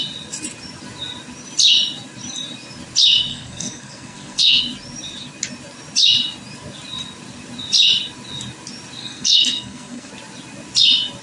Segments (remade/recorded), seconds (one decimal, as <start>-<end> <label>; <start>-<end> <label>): 0.0-3.3 recorded; 3.3-4.6 remade; 4.6-9.0 recorded; 9.0-10.1 remade; 10.1-11.2 recorded